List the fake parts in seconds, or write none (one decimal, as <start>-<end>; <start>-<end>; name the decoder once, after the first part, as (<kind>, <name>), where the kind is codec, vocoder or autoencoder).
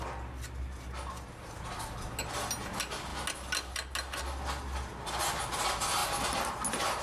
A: none